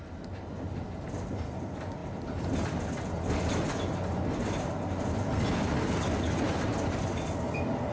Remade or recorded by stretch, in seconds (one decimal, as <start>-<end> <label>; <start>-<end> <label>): 0.0-7.9 recorded